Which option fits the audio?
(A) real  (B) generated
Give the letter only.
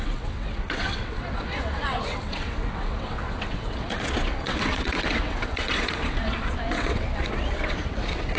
B